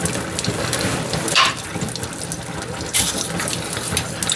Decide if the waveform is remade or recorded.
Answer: recorded